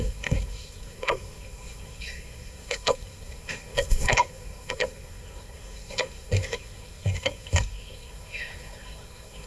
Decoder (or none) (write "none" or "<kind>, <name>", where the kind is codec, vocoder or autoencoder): codec, SNAC